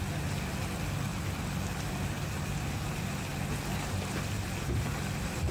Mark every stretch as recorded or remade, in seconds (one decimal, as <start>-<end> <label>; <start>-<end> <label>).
0.0-5.5 recorded